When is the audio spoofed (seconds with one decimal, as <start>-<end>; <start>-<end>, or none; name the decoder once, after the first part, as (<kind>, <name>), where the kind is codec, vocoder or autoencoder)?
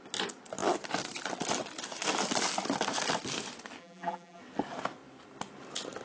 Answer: 3.8-4.4 (vocoder, BigVGAN v2)